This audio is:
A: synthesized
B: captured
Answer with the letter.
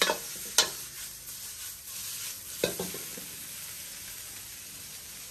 B